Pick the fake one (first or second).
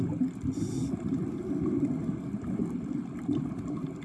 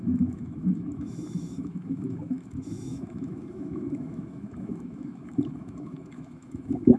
second